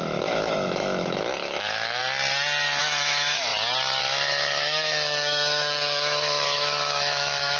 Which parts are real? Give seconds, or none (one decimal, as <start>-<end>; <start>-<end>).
2.0-2.8; 3.5-4.0